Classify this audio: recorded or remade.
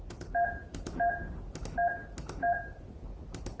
recorded